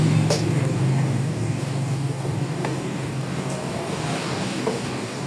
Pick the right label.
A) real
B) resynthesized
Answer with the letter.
B